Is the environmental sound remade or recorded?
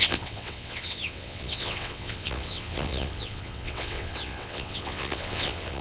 remade